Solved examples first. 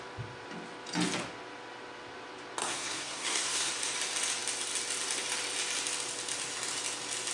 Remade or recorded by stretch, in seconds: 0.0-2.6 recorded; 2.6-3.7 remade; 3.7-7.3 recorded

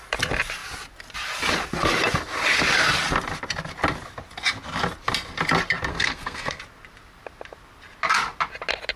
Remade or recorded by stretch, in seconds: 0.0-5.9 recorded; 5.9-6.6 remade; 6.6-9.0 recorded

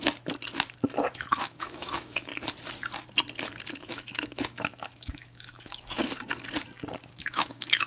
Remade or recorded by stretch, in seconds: 0.0-1.1 recorded; 1.1-2.3 remade; 2.3-3.7 recorded; 3.7-6.0 remade; 6.0-7.1 recorded; 7.1-7.9 remade

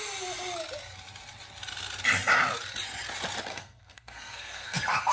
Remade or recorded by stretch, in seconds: 0.0-3.5 recorded; 3.5-5.1 remade

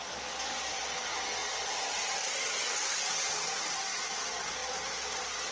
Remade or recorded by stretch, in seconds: 0.0-1.4 recorded; 1.4-3.1 remade; 3.1-5.5 recorded

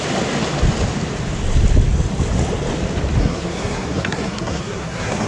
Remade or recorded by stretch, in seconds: 0.0-3.2 recorded; 3.2-5.3 remade